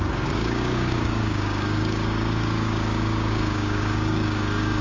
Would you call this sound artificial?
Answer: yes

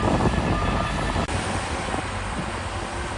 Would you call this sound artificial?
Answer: no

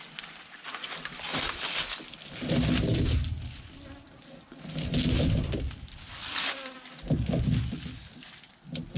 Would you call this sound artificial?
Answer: no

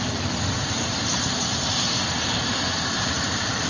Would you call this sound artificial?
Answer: yes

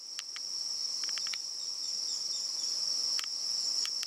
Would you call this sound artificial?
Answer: no